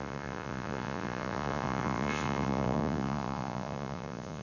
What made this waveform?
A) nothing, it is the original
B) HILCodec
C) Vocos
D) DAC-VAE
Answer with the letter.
C